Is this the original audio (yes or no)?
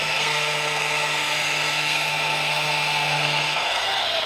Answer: no